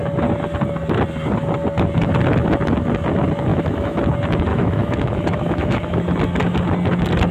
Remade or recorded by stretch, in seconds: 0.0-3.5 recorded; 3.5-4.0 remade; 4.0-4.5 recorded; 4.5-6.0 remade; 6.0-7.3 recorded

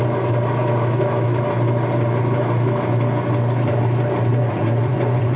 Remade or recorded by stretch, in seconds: 0.0-4.3 recorded; 4.3-5.4 remade

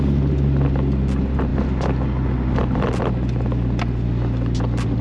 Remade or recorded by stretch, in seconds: 0.0-5.0 recorded

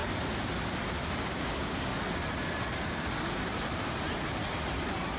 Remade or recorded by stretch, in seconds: 0.0-1.2 recorded; 1.2-1.9 remade; 1.9-5.2 recorded

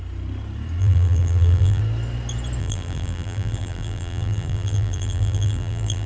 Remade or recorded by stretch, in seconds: 0.0-0.8 recorded; 0.8-1.8 remade; 1.8-2.6 recorded; 2.6-6.1 remade